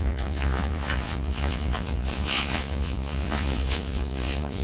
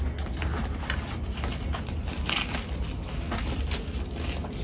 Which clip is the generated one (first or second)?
first